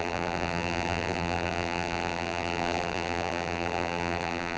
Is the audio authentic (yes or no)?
no